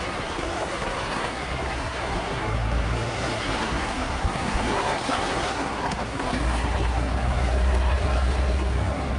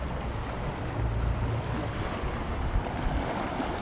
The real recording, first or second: second